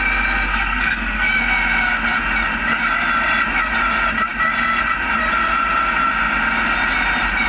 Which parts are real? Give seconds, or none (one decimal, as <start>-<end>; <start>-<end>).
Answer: 0.0-0.5; 1.3-7.5